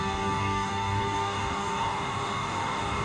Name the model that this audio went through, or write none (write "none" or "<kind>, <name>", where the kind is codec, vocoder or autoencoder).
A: codec, DAC